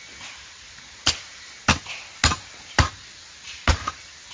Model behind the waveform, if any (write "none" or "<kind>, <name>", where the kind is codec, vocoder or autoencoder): none